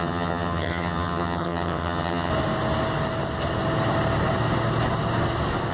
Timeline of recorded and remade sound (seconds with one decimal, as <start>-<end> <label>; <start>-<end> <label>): 0.0-2.3 remade; 2.3-5.7 recorded